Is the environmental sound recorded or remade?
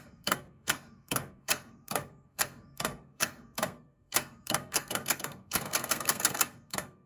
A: remade